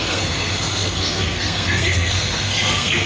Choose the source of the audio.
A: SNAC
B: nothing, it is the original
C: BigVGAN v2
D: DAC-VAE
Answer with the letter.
A